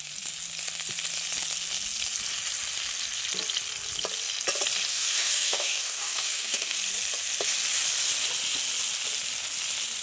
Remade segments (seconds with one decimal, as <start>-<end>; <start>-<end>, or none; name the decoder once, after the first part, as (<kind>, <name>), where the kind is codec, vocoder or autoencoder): 4.9-6.8 (codec, DAC)